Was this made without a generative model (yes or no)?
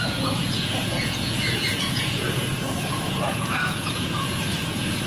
no